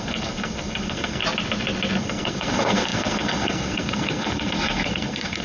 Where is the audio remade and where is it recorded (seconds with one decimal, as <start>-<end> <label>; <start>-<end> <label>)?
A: 0.0-1.2 remade; 1.2-2.0 recorded; 2.0-5.4 remade